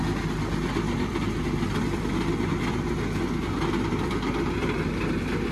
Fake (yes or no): no